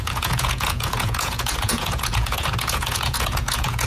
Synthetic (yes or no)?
yes